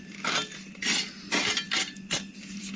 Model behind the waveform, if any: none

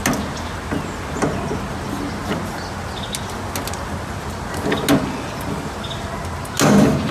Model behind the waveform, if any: none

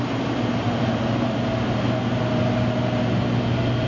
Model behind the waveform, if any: none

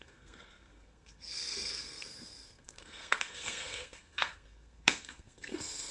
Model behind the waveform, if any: codec, SNAC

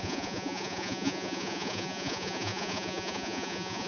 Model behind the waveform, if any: vocoder, Vocos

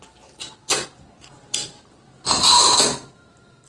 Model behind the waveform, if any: vocoder, BigVGAN v2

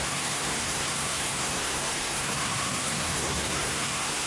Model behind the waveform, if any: codec, SNAC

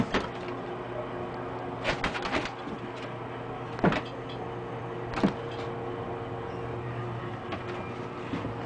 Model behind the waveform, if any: none